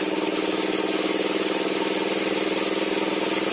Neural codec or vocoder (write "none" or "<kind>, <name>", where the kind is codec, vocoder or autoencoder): none